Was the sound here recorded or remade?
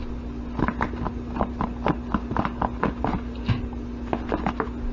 recorded